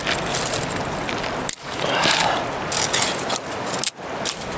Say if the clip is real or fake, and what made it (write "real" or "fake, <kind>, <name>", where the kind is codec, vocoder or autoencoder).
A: real